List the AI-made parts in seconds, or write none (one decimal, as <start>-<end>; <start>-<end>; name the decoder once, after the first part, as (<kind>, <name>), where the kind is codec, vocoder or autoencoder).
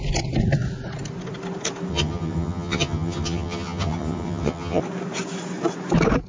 1.9-4.8 (vocoder, HiFi-GAN)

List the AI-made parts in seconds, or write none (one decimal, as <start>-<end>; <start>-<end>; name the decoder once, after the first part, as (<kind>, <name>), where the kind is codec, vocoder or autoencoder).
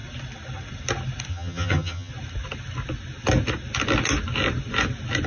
1.3-2.1 (vocoder, HiFi-GAN)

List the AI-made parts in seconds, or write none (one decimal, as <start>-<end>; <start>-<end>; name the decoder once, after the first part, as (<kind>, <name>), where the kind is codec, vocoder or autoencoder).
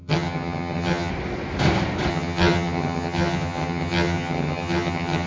0.0-1.1 (vocoder, HiFi-GAN); 2.1-5.3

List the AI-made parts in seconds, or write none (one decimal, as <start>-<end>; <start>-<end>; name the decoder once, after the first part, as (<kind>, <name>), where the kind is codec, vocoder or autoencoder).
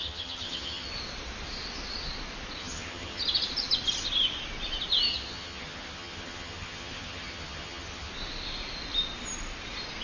0.0-0.9 (vocoder, HiFi-GAN); 2.6-3.2; 5.1-8.1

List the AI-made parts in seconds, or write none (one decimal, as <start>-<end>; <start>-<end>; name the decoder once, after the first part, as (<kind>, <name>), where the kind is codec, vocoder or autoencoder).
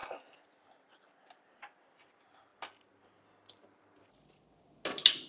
none